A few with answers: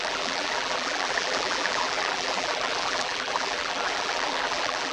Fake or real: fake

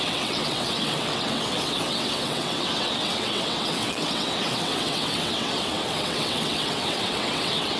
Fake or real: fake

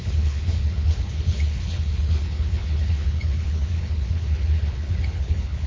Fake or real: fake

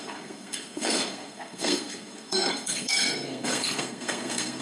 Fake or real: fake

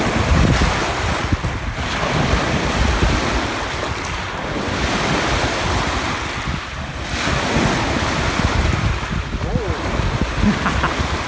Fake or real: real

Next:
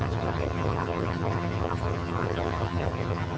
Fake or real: fake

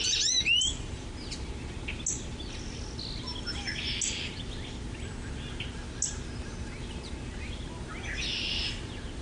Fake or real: real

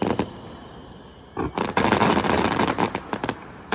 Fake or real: real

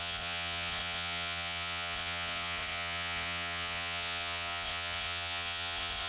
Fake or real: fake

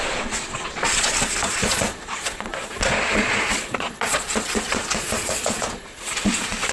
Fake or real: fake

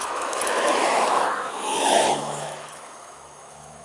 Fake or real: fake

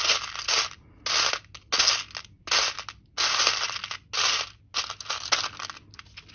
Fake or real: real